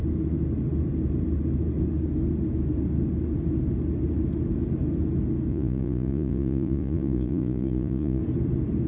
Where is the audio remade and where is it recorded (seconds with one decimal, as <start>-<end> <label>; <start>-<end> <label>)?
0.0-5.5 recorded; 5.5-8.2 remade; 8.2-8.9 recorded